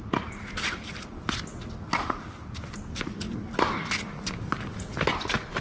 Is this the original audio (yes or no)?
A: yes